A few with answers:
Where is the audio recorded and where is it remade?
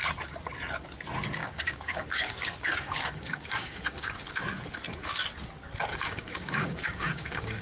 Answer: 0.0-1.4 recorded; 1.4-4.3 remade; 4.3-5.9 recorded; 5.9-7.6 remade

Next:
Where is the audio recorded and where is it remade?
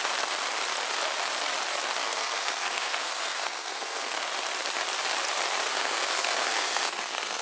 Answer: 0.0-2.0 recorded; 2.0-4.2 remade; 4.2-5.7 recorded; 5.7-7.4 remade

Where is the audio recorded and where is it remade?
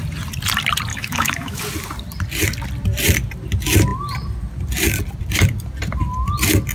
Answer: 0.0-0.9 recorded; 0.9-1.6 remade; 1.6-6.7 recorded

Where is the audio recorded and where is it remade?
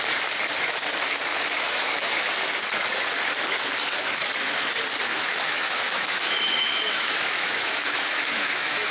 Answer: 0.0-1.3 recorded; 1.3-2.3 remade; 2.3-5.1 recorded; 5.1-8.9 remade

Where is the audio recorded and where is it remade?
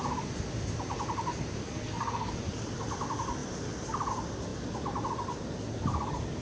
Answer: 0.0-1.6 recorded; 1.6-2.3 remade; 2.3-6.4 recorded